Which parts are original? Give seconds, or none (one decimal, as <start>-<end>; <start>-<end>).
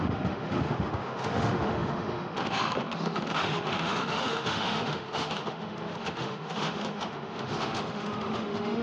none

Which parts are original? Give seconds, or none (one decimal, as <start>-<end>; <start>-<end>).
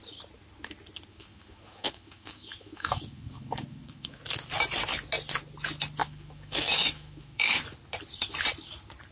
0.0-1.1; 4.2-6.0; 7.6-9.1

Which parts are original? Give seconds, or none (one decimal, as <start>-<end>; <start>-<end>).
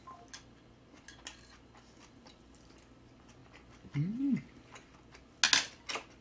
0.0-6.2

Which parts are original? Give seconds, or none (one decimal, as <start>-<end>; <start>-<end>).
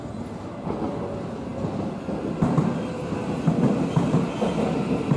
0.0-5.2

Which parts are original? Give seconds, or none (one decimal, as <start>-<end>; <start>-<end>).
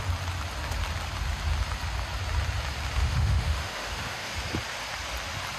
0.0-3.0; 4.3-5.6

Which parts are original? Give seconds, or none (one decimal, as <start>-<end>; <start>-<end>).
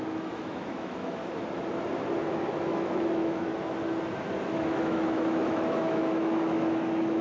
1.2-2.3; 3.5-4.4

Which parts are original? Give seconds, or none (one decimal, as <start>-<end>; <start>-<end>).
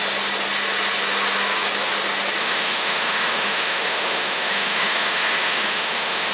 0.0-2.4